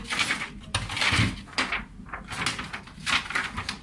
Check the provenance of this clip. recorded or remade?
recorded